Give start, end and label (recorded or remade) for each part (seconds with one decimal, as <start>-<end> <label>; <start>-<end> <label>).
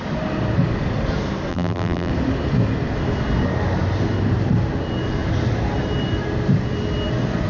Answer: 0.0-1.5 recorded; 1.5-2.1 remade; 2.1-7.5 recorded